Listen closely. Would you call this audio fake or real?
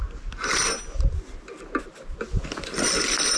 real